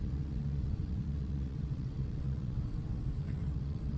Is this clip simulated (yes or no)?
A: yes